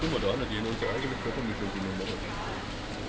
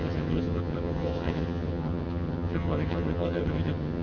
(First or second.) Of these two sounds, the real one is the first